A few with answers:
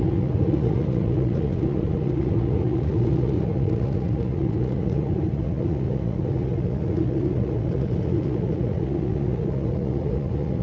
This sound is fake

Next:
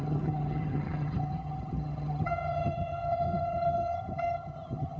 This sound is fake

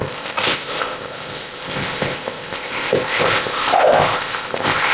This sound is fake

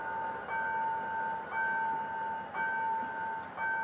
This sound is real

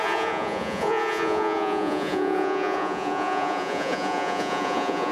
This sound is fake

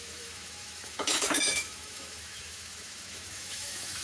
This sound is fake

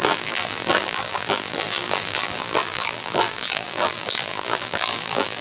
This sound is fake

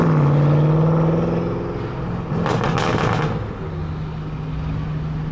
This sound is real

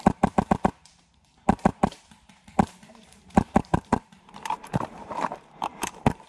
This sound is fake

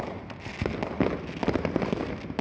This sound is real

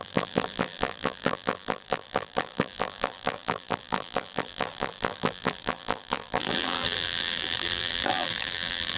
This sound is fake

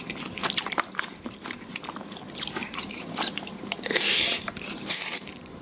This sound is fake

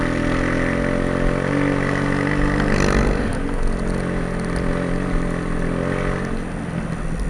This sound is real